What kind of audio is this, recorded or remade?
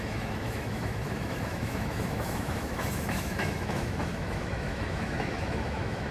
remade